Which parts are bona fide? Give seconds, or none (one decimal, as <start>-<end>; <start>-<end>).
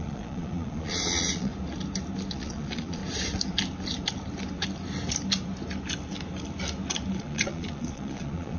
1.5-2.3; 3.0-7.2